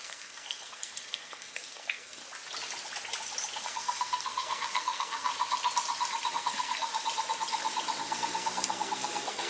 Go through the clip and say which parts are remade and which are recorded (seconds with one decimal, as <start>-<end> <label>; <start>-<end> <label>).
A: 0.0-2.2 remade; 2.2-3.6 recorded; 3.6-5.3 remade; 5.3-6.3 recorded; 6.3-6.9 remade; 6.9-8.0 recorded; 8.0-9.5 remade